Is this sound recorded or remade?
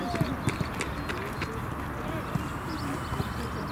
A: recorded